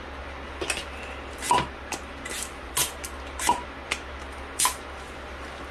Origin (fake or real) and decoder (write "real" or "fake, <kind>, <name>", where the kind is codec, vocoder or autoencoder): real